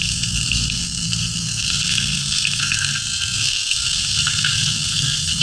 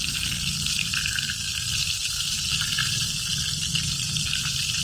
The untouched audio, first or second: second